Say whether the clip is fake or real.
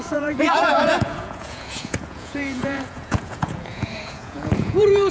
fake